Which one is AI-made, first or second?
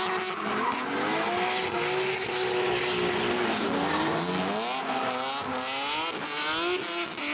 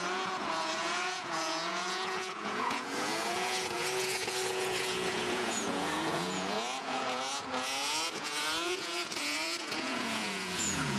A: second